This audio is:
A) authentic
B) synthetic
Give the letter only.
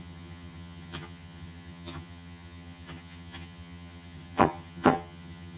B